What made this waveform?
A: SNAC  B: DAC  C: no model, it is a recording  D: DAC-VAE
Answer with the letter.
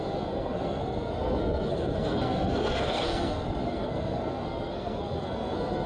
A